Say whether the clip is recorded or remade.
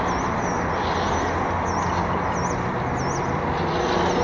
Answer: recorded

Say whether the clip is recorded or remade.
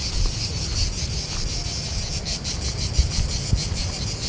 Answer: recorded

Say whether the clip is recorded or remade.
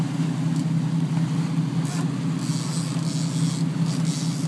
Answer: recorded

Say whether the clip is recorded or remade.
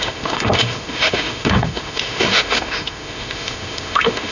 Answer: remade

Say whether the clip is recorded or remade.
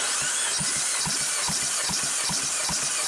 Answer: recorded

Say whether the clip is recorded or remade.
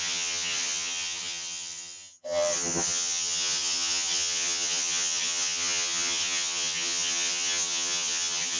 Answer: remade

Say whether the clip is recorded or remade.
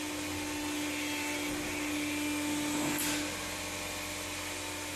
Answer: recorded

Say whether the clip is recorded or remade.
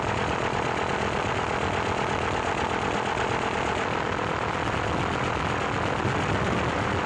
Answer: recorded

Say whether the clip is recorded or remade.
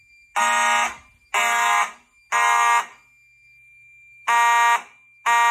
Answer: recorded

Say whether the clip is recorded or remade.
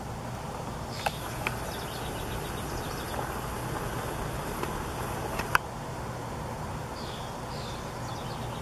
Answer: recorded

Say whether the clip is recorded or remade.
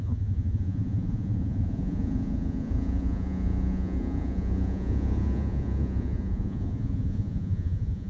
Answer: remade